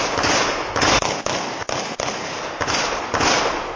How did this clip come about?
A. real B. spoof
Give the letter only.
A